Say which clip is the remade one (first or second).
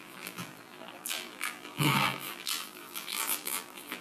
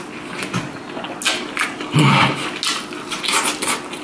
first